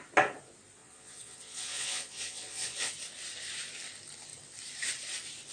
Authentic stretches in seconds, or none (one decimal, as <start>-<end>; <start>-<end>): 0.0-0.8; 2.9-5.5